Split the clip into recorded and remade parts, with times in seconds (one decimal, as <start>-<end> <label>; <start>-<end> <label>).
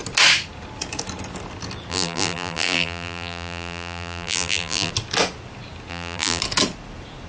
0.0-1.9 recorded; 1.9-4.9 remade; 4.9-5.9 recorded; 5.9-6.4 remade; 6.4-7.3 recorded